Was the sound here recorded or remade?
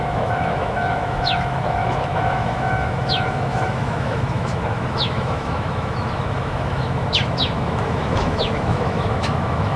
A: remade